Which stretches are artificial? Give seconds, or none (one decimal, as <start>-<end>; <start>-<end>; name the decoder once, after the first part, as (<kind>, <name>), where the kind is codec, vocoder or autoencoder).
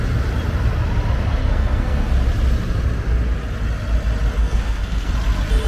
1.4-2.1 (codec, SNAC); 4.4-5.1